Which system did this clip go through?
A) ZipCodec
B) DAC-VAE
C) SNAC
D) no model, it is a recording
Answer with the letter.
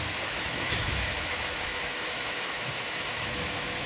B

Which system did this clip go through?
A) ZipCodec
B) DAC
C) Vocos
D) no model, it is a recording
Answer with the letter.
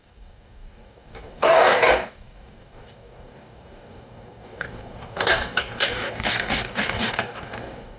B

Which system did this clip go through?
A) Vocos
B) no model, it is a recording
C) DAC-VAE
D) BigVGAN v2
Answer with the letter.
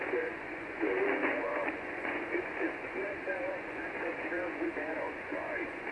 A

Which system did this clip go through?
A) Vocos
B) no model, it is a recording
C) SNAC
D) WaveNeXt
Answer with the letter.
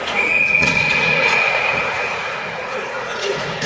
A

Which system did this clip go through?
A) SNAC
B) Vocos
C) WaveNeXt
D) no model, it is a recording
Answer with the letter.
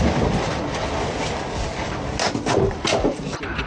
D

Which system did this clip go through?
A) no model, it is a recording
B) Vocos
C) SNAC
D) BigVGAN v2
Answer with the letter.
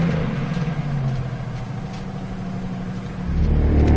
A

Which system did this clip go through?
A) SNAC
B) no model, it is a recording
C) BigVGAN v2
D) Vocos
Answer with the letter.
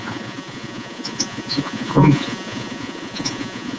D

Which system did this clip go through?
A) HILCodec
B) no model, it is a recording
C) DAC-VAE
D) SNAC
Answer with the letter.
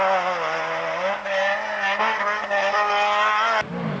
B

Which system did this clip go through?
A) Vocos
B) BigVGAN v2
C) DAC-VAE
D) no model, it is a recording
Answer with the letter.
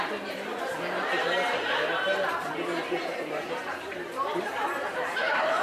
B